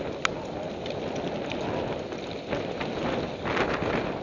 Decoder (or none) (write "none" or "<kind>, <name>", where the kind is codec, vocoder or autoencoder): none